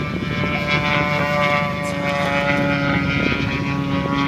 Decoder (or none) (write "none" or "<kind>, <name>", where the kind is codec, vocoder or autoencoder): none